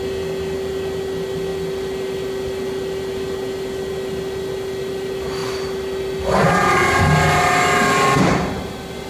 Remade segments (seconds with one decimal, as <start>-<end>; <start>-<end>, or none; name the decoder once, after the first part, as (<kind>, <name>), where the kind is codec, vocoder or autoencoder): none